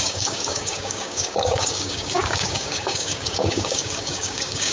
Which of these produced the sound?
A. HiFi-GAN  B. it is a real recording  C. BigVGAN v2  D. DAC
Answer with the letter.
D